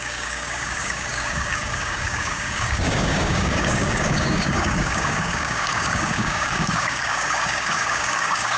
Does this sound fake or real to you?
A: fake